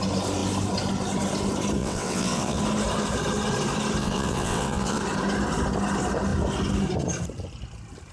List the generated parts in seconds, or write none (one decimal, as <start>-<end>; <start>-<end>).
1.8-2.6; 4.0-5.0